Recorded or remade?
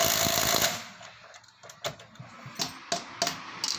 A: recorded